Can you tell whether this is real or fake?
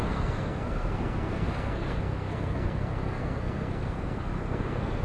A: fake